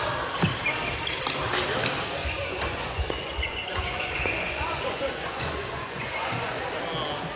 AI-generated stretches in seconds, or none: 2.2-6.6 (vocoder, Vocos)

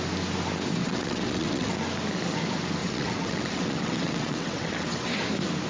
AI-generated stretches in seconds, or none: 0.8-1.7 (vocoder, WaveNeXt); 2.8-5.2

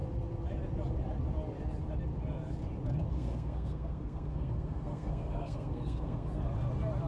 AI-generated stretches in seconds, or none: 3.1-6.4 (codec, SNAC)

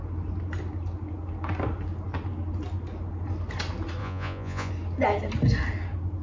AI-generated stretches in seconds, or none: 4.0-4.7 (vocoder, Vocos)

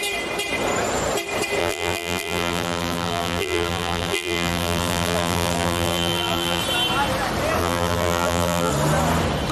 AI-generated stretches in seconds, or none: 1.6-6.6 (vocoder, BigVGAN v2); 7.6-8.7

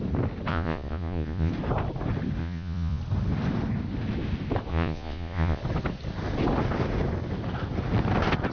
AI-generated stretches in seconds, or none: 0.5-1.5 (vocoder, Vocos); 2.4-3.0; 4.7-5.6

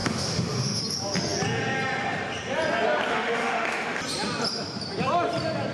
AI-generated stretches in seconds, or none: 0.0-0.8 (autoencoder, DAC-VAE); 3.1-4.0

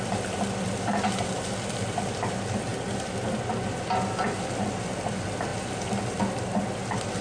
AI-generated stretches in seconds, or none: none